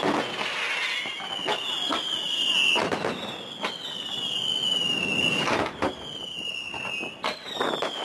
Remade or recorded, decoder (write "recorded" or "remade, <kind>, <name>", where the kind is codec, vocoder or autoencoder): recorded